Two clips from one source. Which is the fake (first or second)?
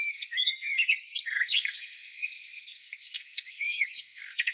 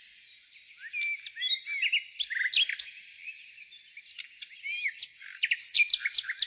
first